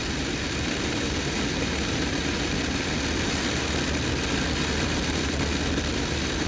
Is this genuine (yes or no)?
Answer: yes